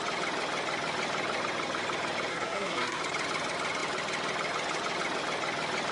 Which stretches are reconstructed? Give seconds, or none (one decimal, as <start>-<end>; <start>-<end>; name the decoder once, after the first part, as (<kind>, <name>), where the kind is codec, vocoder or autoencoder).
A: 2.3-3.0 (codec, SNAC)